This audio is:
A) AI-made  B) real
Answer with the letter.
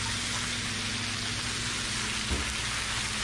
B